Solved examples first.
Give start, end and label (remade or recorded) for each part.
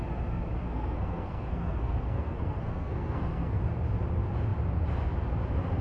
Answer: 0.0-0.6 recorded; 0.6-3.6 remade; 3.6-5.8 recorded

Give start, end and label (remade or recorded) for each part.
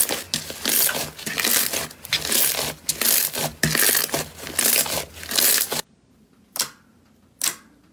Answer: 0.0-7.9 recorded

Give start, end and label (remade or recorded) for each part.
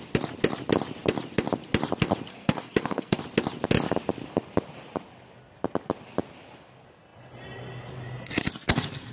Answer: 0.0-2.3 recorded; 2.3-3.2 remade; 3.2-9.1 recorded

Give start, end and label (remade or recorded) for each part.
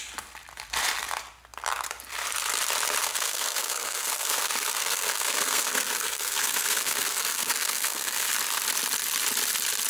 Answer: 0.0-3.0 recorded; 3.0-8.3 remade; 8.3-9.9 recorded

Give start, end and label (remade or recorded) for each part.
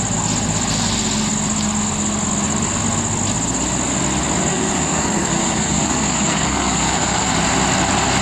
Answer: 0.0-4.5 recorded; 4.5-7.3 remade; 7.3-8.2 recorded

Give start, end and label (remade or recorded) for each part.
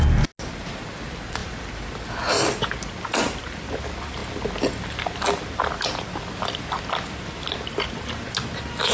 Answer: 0.0-8.9 recorded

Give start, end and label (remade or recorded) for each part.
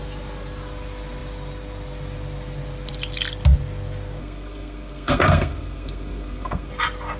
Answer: 0.0-4.2 recorded; 4.2-6.7 remade; 6.7-7.2 recorded